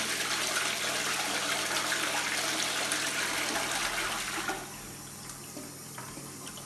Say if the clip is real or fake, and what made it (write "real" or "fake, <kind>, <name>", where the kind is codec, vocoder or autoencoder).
real